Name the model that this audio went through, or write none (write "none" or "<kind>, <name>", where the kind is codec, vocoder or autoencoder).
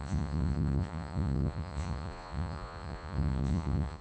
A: vocoder, Vocos